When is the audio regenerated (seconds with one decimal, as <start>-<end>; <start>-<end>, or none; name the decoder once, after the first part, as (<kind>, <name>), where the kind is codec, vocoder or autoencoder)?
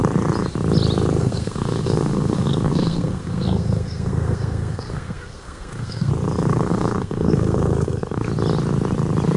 1.2-6.1 (codec, SNAC); 6.5-8.3